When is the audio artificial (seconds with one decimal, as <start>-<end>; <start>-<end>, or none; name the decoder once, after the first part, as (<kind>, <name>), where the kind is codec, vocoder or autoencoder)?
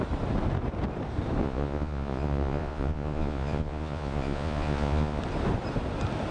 1.4-5.2 (vocoder, Vocos)